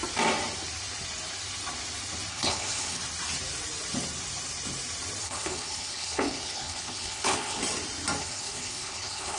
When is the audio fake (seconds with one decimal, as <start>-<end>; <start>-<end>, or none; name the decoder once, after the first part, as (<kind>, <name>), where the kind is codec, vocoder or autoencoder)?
2.3-3.0 (codec, HILCodec); 5.2-7.6; 8.2-9.4